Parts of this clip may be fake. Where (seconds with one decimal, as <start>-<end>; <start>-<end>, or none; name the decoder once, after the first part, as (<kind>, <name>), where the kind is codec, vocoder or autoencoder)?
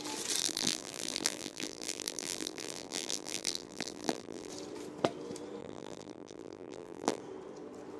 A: 0.4-4.5 (vocoder, BigVGAN v2); 5.6-7.2